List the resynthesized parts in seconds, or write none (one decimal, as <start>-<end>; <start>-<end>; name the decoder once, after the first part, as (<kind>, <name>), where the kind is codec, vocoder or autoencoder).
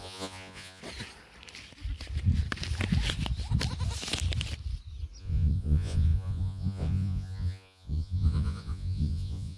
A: 0.0-0.8 (vocoder, Vocos); 5.2-9.6